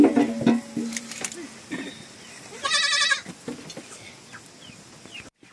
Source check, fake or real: real